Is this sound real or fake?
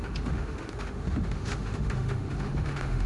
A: fake